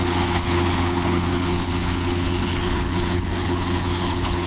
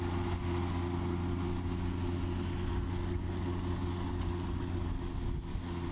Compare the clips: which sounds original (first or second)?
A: second